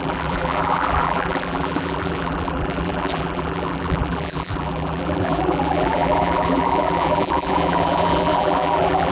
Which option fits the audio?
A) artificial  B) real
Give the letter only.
A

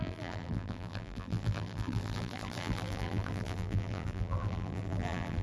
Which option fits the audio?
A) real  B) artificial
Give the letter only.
B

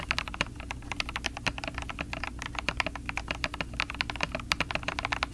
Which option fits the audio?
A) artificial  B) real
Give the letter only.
B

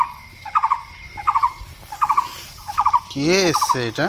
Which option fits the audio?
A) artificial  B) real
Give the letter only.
B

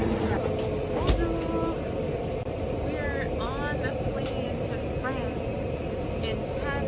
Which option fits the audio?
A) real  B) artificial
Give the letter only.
A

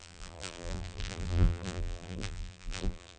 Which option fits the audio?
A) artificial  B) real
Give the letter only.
A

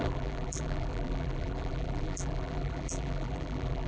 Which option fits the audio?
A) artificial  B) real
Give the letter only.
A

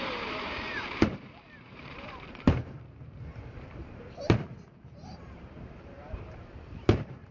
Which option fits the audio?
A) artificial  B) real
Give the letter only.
A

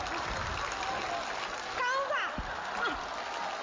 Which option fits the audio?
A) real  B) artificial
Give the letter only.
A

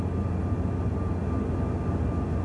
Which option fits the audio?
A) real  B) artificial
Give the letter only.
A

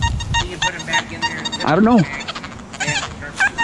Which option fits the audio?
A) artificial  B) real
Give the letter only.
B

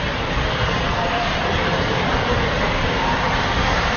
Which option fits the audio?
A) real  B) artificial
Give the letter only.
B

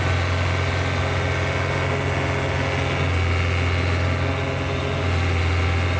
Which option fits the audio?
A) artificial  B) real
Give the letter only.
B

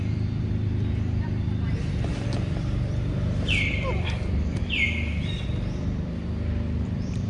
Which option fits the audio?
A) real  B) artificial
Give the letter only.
B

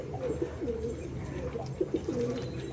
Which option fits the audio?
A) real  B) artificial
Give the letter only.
B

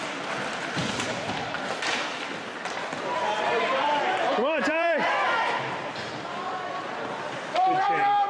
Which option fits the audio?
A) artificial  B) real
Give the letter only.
A